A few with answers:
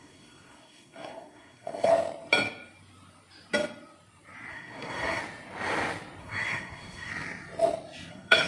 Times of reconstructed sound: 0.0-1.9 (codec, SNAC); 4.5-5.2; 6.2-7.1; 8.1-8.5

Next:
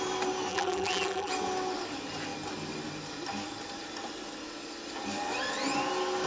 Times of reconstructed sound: 0.5-1.3 (vocoder, BigVGAN v2)